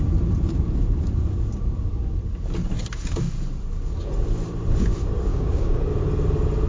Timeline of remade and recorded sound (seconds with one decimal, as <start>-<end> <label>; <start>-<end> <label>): 0.0-5.3 recorded; 5.3-5.9 remade; 5.9-6.7 recorded